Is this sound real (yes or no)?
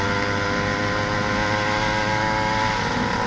yes